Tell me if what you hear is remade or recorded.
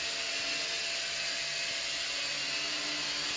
recorded